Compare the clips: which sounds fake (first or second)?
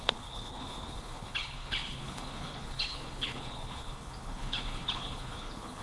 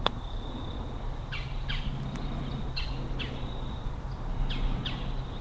first